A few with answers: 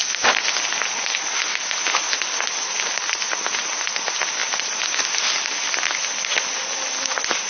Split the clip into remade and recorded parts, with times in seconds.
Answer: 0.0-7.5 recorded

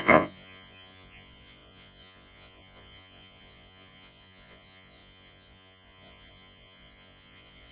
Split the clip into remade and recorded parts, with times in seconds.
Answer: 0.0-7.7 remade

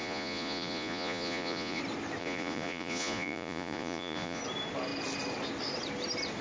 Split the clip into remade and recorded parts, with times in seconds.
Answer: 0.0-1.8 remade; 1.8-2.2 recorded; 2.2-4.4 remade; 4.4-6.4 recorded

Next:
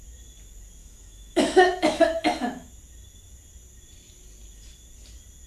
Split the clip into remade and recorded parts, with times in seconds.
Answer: 0.0-0.8 recorded; 0.8-2.7 remade; 2.7-5.5 recorded